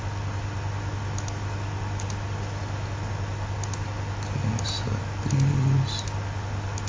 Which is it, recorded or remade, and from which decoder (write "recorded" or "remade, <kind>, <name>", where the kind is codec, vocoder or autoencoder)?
recorded